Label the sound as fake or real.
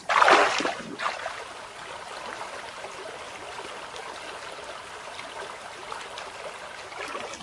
real